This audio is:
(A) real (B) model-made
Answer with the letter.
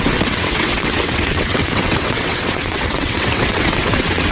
B